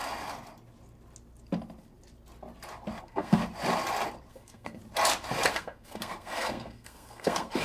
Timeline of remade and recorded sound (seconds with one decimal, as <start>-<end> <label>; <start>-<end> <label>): 0.0-3.0 recorded; 3.0-3.4 remade; 3.4-4.3 recorded; 4.3-4.8 remade; 4.8-5.5 recorded; 5.5-7.6 remade